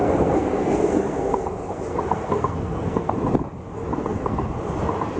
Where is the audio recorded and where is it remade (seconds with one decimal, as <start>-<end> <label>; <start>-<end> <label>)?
0.0-3.1 remade; 3.1-3.9 recorded; 3.9-4.5 remade; 4.5-5.2 recorded